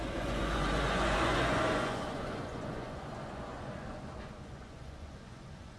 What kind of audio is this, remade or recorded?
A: remade